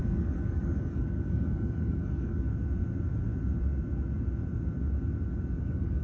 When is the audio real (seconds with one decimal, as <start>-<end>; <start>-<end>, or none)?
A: 2.5-5.6